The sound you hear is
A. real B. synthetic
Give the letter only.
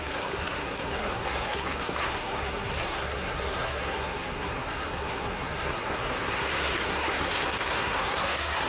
B